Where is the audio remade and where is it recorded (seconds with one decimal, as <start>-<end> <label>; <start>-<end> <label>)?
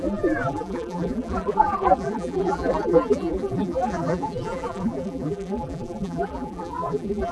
0.0-7.3 remade